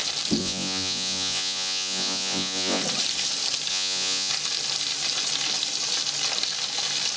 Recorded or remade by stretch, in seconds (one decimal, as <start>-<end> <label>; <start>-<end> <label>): 0.0-0.4 recorded; 0.4-2.8 remade; 2.8-3.7 recorded; 3.7-4.3 remade; 4.3-7.2 recorded